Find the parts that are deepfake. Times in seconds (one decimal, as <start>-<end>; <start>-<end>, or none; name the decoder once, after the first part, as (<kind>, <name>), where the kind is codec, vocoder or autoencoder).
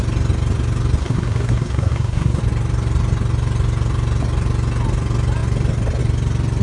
1.0-2.4 (codec, SNAC)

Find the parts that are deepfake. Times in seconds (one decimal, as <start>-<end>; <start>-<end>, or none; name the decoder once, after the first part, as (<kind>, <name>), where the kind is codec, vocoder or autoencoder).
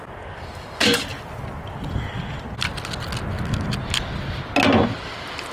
none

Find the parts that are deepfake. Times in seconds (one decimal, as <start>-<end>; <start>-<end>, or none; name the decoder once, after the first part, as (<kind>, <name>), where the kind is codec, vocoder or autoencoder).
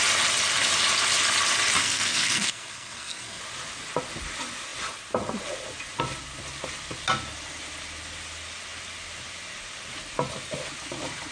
1.8-3.4 (codec, SNAC)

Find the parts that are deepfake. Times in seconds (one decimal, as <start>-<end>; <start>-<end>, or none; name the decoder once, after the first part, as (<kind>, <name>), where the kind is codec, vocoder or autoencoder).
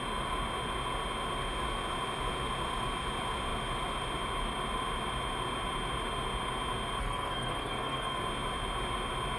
7.0-8.2 (codec, SNAC)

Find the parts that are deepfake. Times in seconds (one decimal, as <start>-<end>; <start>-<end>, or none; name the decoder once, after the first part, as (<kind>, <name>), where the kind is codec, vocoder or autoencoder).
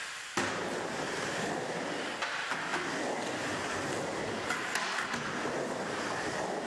none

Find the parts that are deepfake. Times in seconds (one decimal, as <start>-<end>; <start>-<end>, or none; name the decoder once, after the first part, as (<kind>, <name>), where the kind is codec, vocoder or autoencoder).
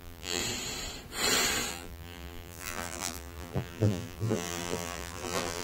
0.0-0.4 (vocoder, BigVGAN v2); 1.7-5.6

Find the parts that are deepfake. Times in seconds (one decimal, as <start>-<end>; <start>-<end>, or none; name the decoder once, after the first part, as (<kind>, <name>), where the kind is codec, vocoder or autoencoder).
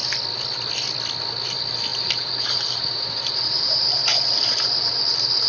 1.9-5.5 (vocoder, BigVGAN v2)